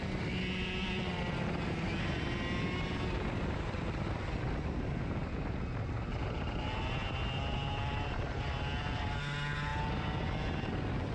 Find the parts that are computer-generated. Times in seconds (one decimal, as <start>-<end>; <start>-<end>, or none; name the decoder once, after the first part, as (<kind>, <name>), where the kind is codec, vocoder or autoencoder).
none